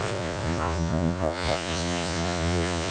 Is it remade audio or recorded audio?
remade